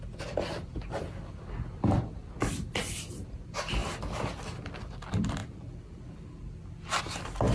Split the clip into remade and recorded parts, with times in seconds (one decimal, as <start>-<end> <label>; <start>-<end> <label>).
0.0-0.7 remade; 0.7-3.1 recorded; 3.1-3.8 remade; 3.8-4.8 recorded; 4.8-5.4 remade; 5.4-7.0 recorded; 7.0-7.5 remade